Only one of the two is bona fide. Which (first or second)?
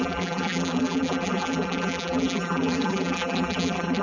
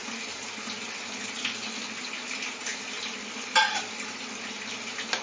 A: second